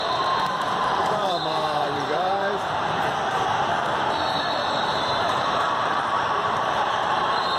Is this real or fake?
fake